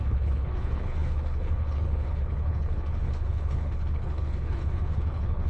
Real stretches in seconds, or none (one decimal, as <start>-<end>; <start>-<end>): none